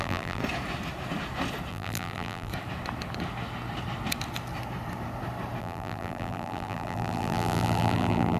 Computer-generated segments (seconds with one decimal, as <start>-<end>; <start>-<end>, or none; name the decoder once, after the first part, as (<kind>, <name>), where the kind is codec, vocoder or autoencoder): 0.0-0.4 (vocoder, BigVGAN v2); 1.7-2.5; 5.6-8.4